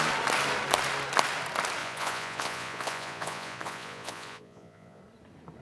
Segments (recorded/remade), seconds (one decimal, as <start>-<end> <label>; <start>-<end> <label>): 0.0-1.8 recorded; 1.8-5.0 remade; 5.0-5.6 recorded